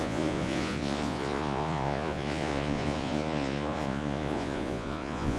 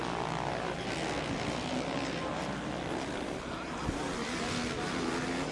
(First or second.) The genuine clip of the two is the second